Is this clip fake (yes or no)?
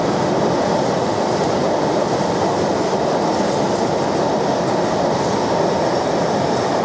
no